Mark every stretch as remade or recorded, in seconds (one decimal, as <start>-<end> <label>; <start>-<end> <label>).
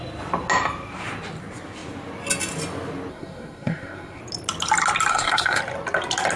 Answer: 0.0-3.1 recorded; 3.1-4.2 remade; 4.2-5.1 recorded; 5.1-5.6 remade; 5.6-6.4 recorded